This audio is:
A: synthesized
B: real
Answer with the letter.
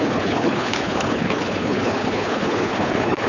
A